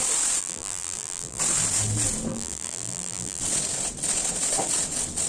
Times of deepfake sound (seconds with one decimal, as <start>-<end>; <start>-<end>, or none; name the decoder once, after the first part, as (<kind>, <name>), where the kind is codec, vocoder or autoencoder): 0.4-1.4 (vocoder, BigVGAN v2); 2.3-3.4